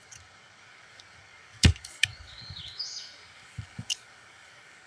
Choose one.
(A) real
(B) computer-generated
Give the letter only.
B